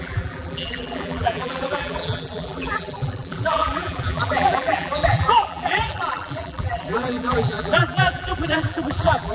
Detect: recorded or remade remade